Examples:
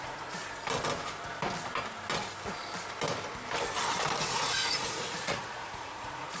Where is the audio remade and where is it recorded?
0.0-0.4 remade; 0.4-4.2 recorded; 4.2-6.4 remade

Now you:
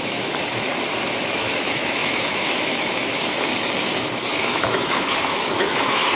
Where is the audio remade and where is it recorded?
0.0-0.7 remade; 0.7-1.3 recorded; 1.3-3.5 remade; 3.5-4.3 recorded; 4.3-6.2 remade

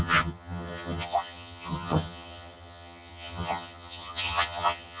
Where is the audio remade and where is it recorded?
0.0-5.0 remade

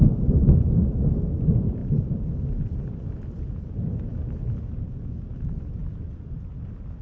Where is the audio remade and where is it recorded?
0.0-7.0 recorded